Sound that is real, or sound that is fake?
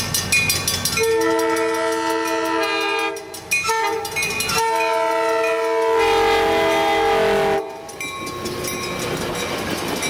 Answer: real